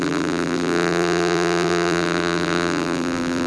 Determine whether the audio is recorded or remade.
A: remade